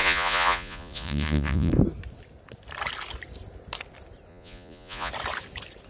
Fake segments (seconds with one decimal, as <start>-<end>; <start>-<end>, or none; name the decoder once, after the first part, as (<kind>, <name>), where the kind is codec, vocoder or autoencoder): 0.0-1.7 (vocoder, Vocos); 4.3-5.1